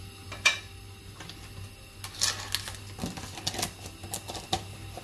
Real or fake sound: real